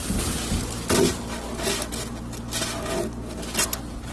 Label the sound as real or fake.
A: real